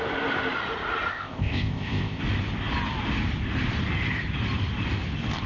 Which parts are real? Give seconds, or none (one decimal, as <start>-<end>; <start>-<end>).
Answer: 0.0-1.1; 2.2-5.5